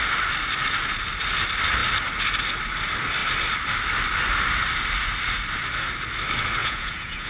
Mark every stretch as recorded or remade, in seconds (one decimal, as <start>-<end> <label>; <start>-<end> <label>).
0.0-6.6 recorded; 6.6-7.3 remade